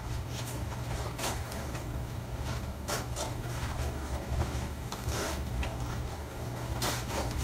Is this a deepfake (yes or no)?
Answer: yes